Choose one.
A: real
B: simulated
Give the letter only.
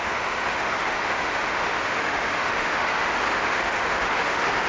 B